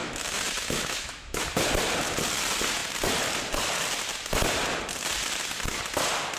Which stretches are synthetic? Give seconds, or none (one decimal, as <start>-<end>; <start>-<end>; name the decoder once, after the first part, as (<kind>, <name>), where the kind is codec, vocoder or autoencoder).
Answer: 0.0-1.4 (autoencoder, DAC-VAE)